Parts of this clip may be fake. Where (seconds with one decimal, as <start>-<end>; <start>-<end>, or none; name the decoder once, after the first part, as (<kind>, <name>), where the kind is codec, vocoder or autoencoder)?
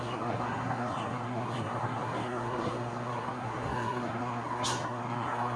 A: 0.0-5.6 (codec, SNAC)